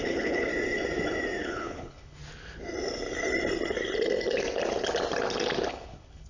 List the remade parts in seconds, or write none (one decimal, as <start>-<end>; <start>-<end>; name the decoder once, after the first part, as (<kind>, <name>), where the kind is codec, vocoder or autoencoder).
0.0-0.5 (codec, HILCodec); 1.4-2.2; 5.7-6.3